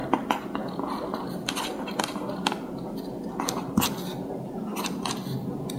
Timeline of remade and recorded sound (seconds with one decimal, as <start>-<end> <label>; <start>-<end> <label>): 0.0-5.8 recorded

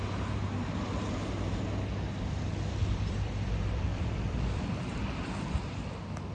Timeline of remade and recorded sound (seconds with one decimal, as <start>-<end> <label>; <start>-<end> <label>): 0.0-2.8 recorded; 2.8-4.6 remade; 4.6-6.3 recorded